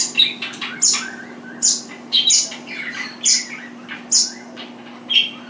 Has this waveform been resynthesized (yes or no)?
no